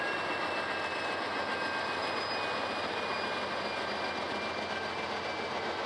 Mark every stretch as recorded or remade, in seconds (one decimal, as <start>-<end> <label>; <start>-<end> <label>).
0.0-5.9 recorded